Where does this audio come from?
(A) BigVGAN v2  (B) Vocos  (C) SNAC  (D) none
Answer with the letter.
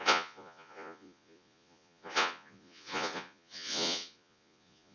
B